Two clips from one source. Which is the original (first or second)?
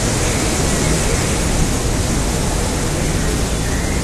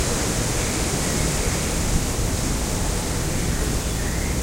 first